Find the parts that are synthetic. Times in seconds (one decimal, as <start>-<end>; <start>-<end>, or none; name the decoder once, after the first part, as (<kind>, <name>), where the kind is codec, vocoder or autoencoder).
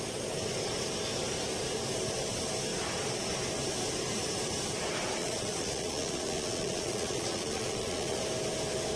5.2-8.2 (vocoder, Vocos)